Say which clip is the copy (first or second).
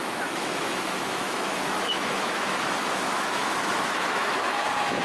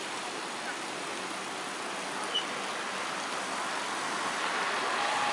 first